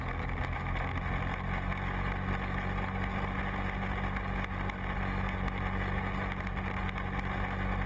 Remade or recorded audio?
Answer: recorded